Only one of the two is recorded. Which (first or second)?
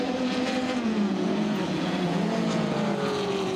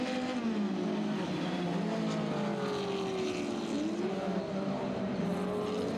second